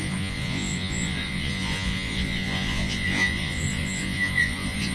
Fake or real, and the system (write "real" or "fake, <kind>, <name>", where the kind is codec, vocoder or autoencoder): fake, vocoder, Vocos